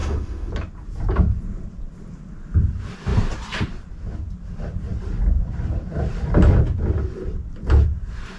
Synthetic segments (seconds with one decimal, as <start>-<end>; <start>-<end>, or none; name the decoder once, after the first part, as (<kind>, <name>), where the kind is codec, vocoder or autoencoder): 0.0-0.5 (autoencoder, DAC-VAE)